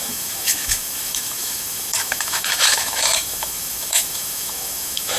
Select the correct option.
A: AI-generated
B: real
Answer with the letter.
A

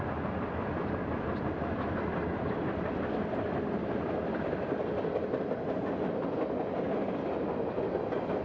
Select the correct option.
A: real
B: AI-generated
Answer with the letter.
A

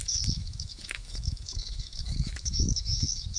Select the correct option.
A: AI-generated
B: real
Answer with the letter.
A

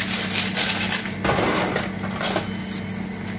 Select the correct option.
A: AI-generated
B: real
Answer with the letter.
B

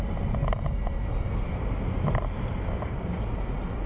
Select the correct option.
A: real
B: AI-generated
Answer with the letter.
A